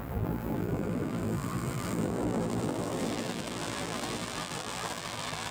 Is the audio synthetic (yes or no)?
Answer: yes